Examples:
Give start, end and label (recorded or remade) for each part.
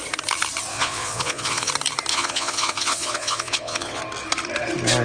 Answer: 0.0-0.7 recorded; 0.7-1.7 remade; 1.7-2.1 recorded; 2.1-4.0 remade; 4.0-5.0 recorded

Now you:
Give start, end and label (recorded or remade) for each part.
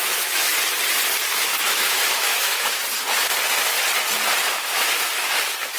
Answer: 0.0-0.5 remade; 0.5-1.4 recorded; 1.4-2.8 remade; 2.8-4.5 recorded; 4.5-5.8 remade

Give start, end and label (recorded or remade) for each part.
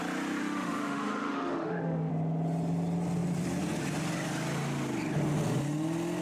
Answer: 0.0-0.4 recorded; 0.4-2.1 remade; 2.1-6.2 recorded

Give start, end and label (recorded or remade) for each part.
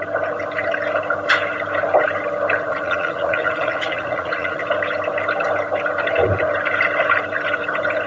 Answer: 0.0-2.7 recorded; 2.7-4.6 remade; 4.6-8.1 recorded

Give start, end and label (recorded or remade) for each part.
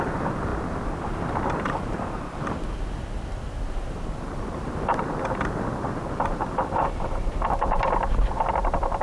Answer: 0.0-0.5 recorded; 0.5-2.4 remade; 2.4-9.0 recorded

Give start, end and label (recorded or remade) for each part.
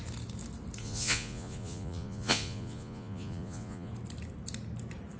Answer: 0.0-0.8 recorded; 0.8-3.9 remade; 3.9-5.2 recorded